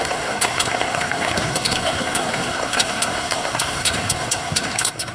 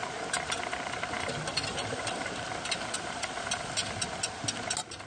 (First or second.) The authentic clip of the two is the second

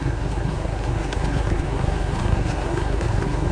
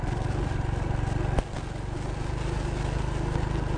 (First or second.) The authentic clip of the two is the second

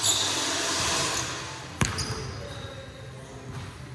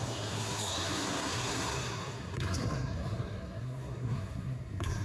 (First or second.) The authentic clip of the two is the first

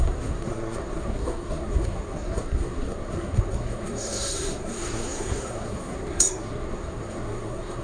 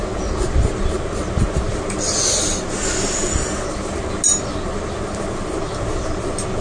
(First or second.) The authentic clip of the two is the second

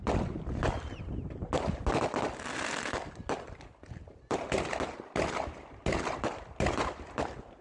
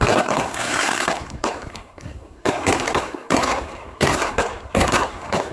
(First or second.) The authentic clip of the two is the first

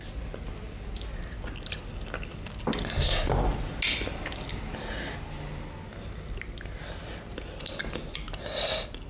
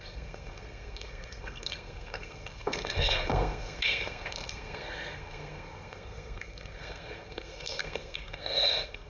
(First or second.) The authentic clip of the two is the first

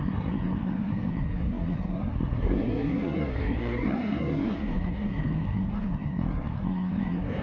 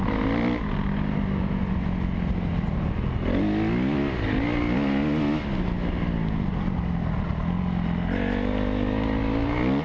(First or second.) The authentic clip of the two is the second